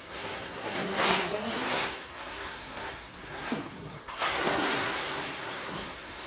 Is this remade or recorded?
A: remade